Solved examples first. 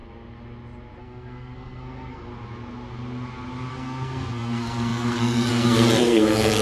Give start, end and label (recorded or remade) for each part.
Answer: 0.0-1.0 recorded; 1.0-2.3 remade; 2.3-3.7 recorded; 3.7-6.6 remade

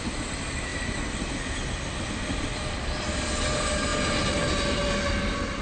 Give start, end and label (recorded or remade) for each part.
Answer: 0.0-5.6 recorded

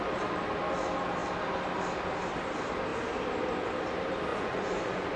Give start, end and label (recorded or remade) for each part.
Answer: 0.0-4.3 recorded; 4.3-5.2 remade